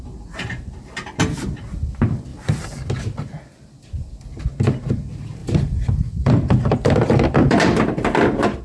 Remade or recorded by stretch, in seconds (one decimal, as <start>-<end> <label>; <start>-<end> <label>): 0.0-2.3 recorded; 2.3-2.9 remade; 2.9-5.4 recorded; 5.4-8.6 remade